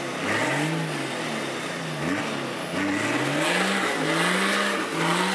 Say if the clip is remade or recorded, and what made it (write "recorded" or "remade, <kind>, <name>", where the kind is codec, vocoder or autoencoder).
recorded